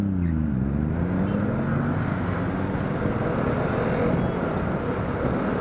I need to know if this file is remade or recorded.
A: recorded